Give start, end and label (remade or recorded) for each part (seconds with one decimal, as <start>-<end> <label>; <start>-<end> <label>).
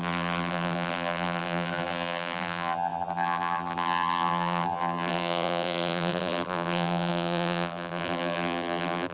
0.0-9.1 remade